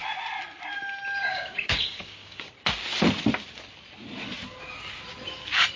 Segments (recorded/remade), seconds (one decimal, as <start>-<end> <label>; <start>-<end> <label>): 0.0-1.2 recorded; 1.2-2.5 remade; 2.5-5.8 recorded